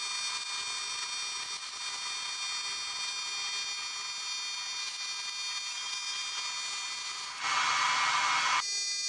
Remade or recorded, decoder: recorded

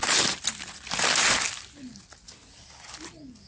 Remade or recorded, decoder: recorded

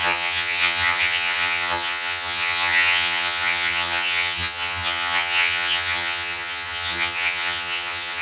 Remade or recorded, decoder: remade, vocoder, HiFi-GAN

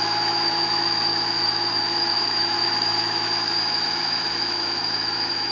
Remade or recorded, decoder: remade, autoencoder, DAC-VAE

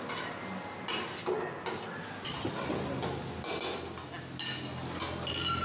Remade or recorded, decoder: recorded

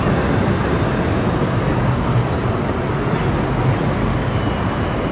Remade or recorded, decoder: recorded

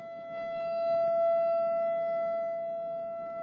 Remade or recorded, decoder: recorded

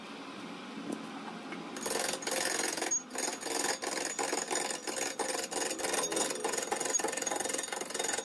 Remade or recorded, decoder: recorded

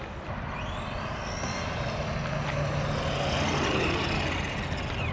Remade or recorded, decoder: recorded